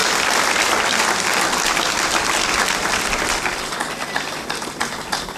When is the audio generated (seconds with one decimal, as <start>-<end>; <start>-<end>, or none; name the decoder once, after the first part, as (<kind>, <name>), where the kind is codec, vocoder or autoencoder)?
none